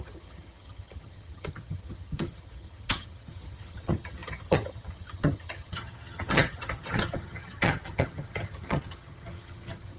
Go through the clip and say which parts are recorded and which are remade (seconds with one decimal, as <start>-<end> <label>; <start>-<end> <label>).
0.0-10.0 remade